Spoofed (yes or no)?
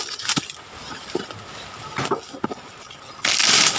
no